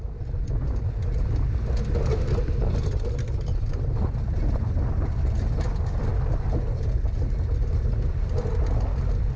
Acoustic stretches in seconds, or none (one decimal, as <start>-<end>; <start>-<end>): 0.0-9.4